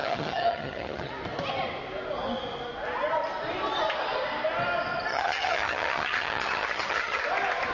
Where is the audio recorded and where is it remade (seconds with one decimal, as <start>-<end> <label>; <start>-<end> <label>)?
0.0-1.1 remade; 1.1-5.1 recorded; 5.1-7.2 remade; 7.2-7.7 recorded